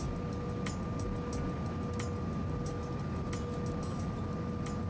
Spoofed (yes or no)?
no